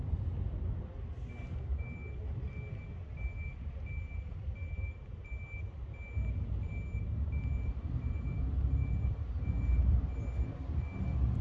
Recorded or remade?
recorded